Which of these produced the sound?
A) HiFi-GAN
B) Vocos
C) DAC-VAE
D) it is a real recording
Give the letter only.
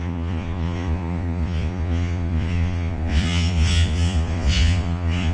B